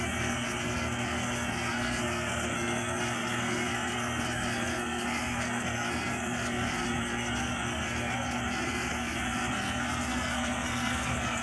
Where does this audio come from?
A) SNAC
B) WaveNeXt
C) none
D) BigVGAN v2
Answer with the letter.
A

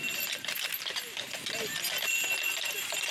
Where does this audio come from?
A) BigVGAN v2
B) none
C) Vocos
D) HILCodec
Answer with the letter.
B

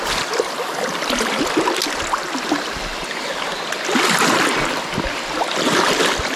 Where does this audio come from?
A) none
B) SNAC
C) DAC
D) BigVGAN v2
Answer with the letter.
A